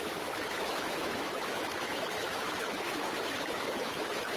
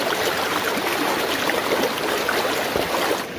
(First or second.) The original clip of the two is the second